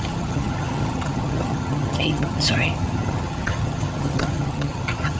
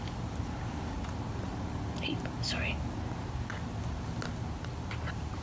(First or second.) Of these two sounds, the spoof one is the first